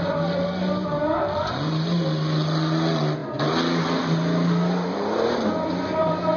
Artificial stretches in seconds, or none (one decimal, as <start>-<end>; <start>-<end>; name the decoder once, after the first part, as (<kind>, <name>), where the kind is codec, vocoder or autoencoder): none

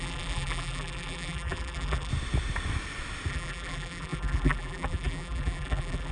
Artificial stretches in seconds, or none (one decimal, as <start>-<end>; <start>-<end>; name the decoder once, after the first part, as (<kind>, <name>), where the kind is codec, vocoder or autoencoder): 0.0-2.1 (vocoder, BigVGAN v2); 3.3-6.1

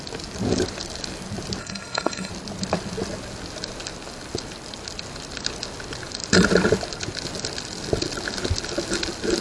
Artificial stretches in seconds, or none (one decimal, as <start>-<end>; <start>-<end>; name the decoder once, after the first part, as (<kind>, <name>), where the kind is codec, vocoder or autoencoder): 1.6-2.3 (codec, SNAC)

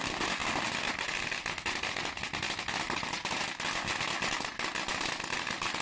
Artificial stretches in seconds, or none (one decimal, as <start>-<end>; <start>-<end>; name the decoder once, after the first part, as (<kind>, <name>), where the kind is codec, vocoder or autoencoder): none